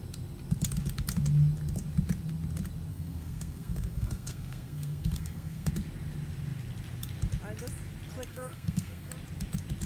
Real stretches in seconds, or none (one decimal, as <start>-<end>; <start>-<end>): 0.0-2.9; 5.7-8.3; 9.1-9.9